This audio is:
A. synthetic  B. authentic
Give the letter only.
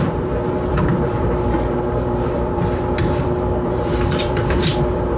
A